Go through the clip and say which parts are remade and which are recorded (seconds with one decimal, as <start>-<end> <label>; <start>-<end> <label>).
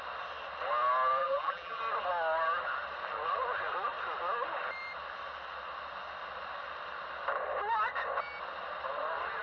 0.0-1.2 recorded; 1.2-1.8 remade; 1.8-9.4 recorded